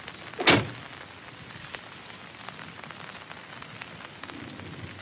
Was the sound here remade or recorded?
recorded